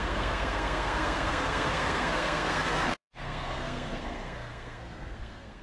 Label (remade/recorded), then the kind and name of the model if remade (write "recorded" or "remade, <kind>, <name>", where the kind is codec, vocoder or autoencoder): remade, codec, SNAC